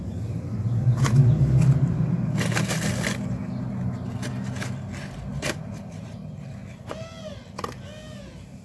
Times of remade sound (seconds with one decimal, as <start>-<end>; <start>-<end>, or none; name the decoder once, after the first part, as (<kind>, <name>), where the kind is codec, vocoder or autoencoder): none